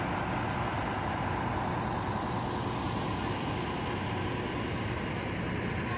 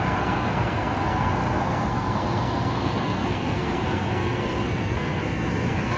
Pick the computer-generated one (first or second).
second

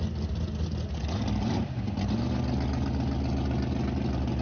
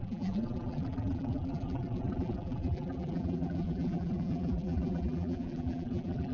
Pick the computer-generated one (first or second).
second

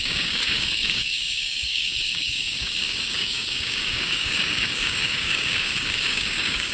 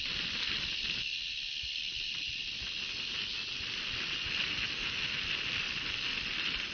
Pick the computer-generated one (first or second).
first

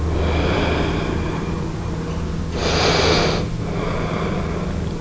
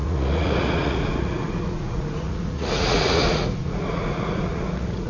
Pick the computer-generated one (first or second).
second